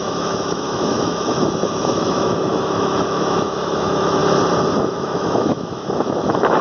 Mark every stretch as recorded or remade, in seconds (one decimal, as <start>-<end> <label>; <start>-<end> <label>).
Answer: 0.0-4.2 remade; 4.2-4.8 recorded; 4.8-6.6 remade